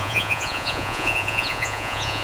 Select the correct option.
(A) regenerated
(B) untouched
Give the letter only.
A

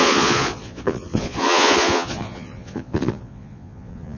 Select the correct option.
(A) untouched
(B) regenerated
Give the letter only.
B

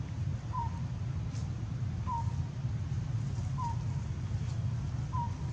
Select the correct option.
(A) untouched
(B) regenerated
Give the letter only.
A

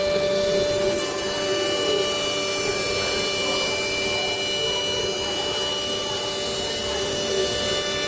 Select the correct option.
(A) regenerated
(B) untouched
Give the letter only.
B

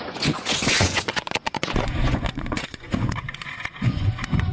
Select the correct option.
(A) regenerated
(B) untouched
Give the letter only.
A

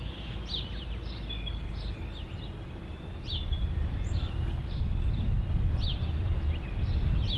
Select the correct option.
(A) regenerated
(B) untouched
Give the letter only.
B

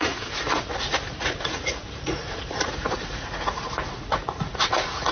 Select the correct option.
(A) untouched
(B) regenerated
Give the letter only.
B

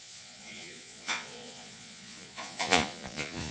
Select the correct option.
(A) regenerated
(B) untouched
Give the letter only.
A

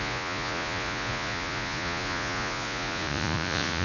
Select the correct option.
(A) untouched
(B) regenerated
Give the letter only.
B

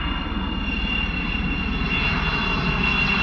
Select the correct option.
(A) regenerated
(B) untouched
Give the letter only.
B